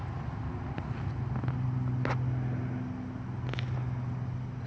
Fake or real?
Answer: real